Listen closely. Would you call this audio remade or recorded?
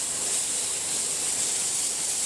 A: recorded